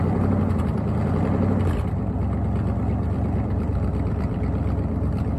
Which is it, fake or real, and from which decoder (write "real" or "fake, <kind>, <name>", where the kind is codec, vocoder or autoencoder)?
fake, vocoder, BigVGAN v2